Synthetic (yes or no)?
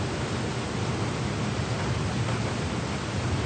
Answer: no